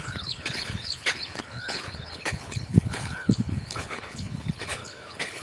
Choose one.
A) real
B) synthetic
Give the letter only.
B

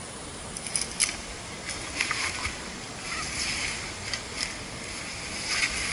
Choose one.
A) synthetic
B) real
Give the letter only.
B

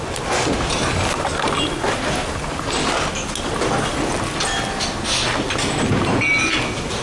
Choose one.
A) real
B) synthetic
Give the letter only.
A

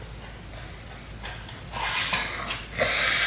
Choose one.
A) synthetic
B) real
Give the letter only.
B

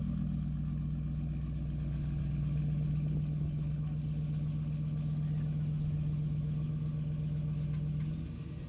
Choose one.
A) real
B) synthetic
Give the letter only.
A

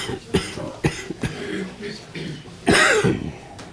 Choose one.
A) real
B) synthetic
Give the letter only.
A